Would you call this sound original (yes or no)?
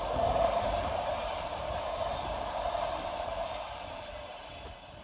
no